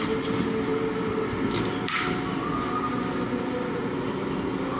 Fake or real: real